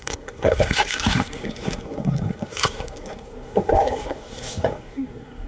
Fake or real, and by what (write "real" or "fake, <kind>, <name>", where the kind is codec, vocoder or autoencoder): fake, codec, SNAC